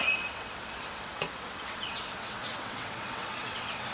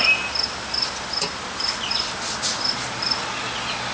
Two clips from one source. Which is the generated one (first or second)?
first